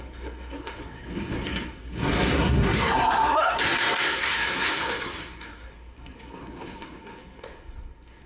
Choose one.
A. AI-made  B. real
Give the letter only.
A